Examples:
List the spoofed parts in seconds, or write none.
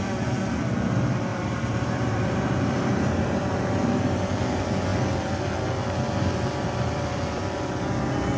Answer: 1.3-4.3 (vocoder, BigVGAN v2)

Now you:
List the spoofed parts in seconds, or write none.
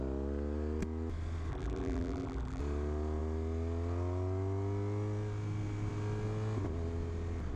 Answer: 1.5-2.6 (vocoder, BigVGAN v2)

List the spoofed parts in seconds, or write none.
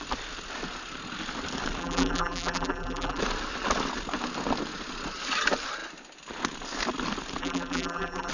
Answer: 1.8-3.2 (vocoder, BigVGAN v2); 7.4-8.3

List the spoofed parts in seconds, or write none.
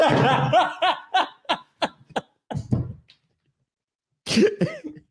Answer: none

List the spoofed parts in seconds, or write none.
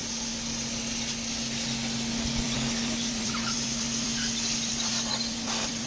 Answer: 2.4-4.1 (vocoder, BigVGAN v2); 4.7-5.9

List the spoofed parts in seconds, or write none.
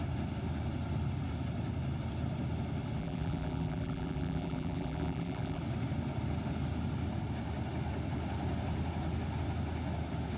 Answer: 3.0-5.6 (vocoder, BigVGAN v2)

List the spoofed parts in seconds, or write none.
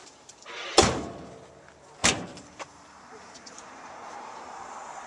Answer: 0.0-1.3 (vocoder, BigVGAN v2); 2.0-5.1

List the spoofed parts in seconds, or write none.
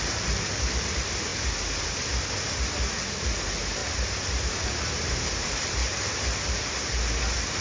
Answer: 0.0-1.3 (vocoder, BigVGAN v2); 2.7-5.8; 6.6-7.6